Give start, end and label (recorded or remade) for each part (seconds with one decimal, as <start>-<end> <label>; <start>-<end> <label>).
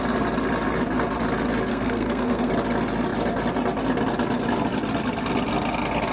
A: 0.0-1.7 recorded; 1.7-2.5 remade; 2.5-6.1 recorded